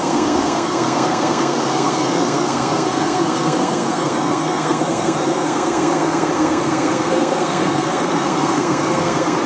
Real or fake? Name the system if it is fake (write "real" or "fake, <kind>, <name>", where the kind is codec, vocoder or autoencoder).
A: fake, codec, SNAC